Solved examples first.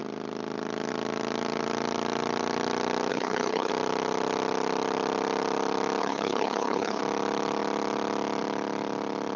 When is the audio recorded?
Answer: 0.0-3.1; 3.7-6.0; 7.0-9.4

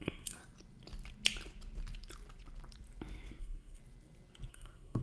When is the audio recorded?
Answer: 0.4-3.4; 3.8-4.5

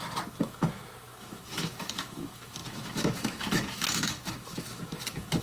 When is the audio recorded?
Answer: none